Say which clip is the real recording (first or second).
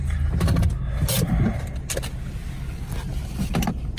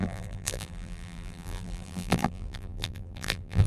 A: first